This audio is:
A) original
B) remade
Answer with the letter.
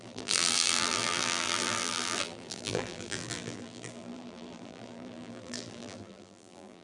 B